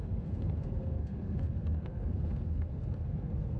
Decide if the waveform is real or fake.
fake